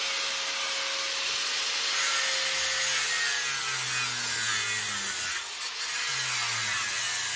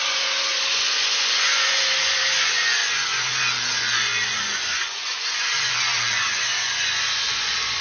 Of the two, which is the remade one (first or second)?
second